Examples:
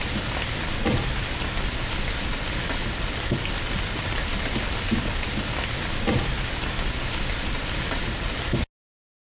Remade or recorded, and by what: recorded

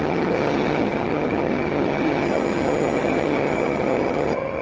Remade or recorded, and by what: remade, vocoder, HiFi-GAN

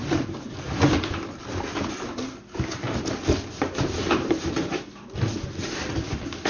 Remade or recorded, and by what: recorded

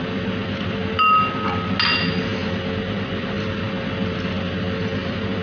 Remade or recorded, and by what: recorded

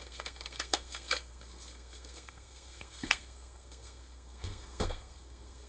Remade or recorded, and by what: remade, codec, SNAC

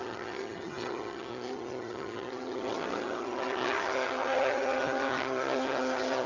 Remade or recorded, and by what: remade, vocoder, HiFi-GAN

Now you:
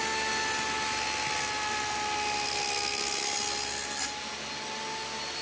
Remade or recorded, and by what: recorded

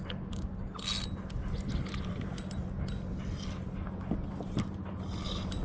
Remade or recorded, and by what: recorded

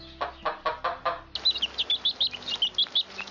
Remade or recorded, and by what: recorded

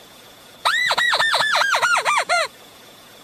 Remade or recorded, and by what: remade, vocoder, Vocos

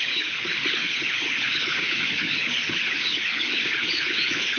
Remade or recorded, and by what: remade, codec, HILCodec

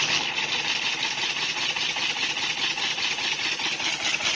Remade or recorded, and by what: recorded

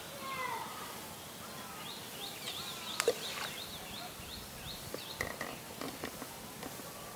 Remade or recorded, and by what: recorded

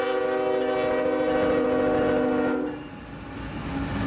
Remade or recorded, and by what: recorded